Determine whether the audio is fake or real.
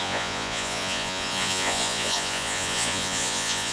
fake